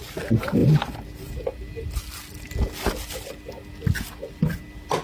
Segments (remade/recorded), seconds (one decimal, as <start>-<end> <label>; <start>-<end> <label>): 0.0-5.0 recorded